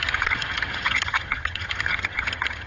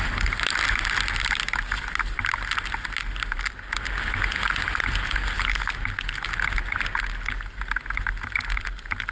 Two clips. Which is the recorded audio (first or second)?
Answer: second